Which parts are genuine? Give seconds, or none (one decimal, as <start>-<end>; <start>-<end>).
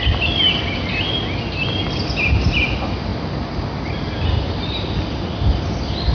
0.0-6.1